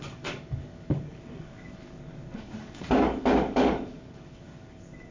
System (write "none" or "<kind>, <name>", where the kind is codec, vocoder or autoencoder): codec, DAC